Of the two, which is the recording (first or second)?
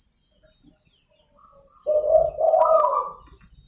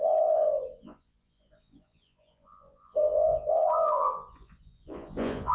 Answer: first